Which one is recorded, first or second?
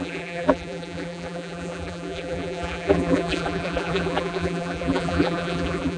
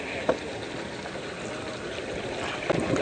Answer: second